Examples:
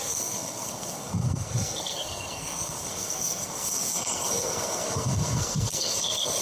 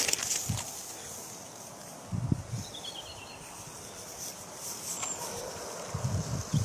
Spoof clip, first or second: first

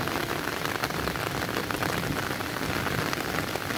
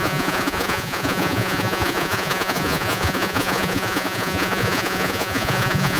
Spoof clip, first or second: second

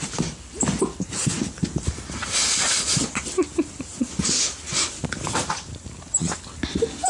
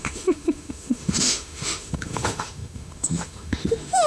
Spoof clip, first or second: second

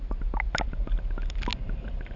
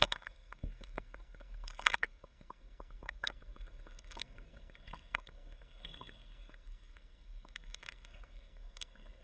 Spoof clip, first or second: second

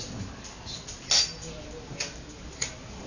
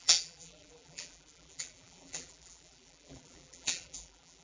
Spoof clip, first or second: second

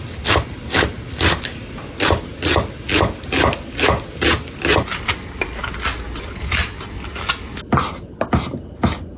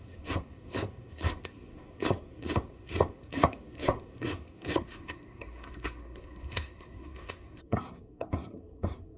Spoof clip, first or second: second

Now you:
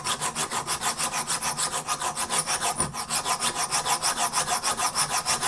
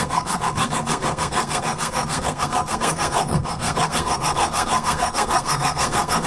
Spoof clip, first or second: second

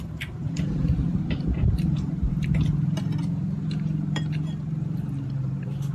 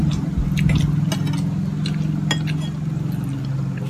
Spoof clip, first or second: first